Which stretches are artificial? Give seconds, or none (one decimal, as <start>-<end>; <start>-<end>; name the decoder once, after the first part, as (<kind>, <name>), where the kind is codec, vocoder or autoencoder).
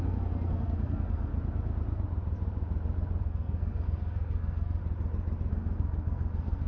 0.0-1.3 (codec, SNAC); 3.2-4.8; 5.5-6.7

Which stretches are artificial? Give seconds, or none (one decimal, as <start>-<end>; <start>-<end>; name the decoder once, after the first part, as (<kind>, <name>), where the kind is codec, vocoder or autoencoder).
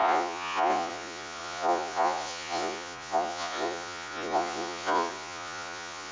0.0-6.1 (vocoder, Vocos)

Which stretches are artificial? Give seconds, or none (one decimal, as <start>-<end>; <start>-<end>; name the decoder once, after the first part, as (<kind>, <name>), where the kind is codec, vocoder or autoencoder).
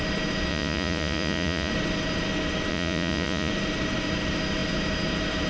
0.5-1.7 (vocoder, Vocos); 2.7-3.5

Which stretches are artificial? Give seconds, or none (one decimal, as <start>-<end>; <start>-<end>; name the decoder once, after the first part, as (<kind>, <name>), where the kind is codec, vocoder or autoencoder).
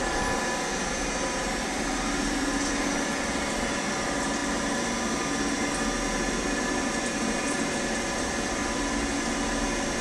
0.0-4.4 (vocoder, BigVGAN v2); 6.4-10.0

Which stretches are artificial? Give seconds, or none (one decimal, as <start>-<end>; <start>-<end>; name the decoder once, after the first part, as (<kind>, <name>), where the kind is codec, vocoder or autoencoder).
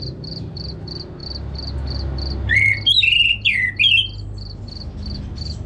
none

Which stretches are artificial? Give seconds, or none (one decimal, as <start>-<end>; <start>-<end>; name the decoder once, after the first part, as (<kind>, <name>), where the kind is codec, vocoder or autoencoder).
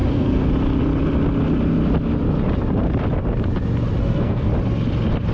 0.0-0.5 (codec, SNAC); 4.0-4.5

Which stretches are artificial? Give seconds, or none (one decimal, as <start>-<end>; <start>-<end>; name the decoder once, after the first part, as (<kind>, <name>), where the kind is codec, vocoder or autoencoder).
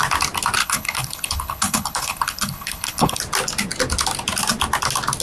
0.6-3.2 (codec, HILCodec)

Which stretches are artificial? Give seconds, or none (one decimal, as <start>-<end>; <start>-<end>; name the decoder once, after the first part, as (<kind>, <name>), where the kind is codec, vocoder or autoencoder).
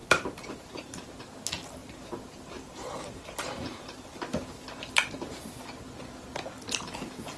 0.0-1.0 (vocoder, BigVGAN v2); 1.8-4.8